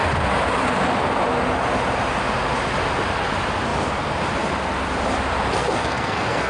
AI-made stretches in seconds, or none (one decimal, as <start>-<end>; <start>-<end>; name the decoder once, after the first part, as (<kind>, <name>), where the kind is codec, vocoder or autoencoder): 5.6-6.5 (codec, SNAC)